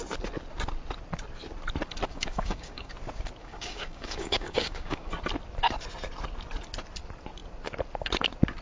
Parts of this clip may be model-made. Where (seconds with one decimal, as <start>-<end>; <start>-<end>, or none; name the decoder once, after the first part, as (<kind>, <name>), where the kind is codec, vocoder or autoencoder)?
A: 2.1-2.9 (codec, DAC); 3.4-5.1